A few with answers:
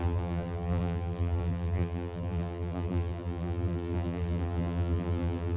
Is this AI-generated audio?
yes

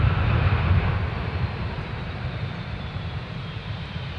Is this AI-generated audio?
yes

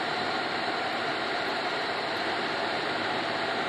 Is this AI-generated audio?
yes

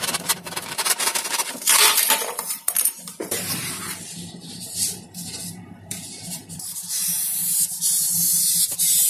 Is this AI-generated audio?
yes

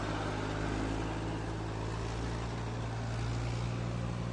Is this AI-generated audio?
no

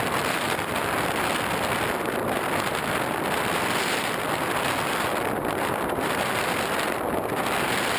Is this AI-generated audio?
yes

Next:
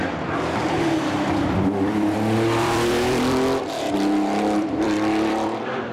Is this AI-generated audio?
yes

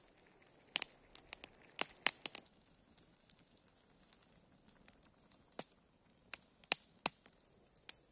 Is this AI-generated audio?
no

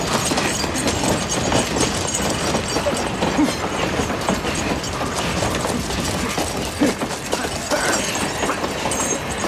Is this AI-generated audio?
no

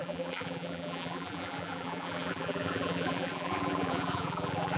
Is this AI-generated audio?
yes